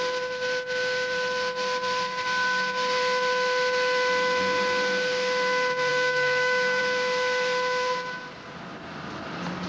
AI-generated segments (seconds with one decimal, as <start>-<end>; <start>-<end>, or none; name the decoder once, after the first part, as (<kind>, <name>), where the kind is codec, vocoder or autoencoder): 5.9-6.8 (codec, DAC)